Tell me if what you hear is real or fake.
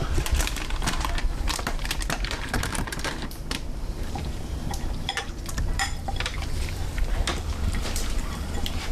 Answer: fake